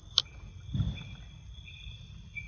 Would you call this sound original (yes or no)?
yes